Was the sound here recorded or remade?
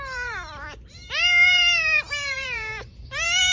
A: remade